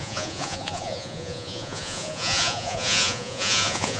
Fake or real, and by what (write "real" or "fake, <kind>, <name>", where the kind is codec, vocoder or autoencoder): fake, vocoder, Vocos